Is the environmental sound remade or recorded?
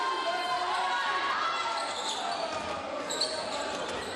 recorded